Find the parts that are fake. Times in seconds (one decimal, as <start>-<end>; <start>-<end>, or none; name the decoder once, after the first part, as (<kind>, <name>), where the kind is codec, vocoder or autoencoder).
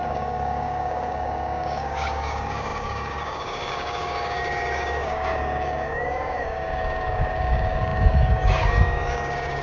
0.0-9.6 (codec, DAC)